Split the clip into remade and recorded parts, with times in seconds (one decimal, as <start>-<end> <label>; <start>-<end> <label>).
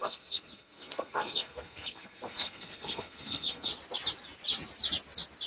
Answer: 0.0-3.7 remade; 3.7-5.5 recorded